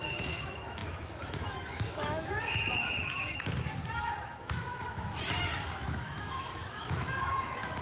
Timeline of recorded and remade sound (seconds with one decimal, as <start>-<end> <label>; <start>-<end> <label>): 0.0-7.8 remade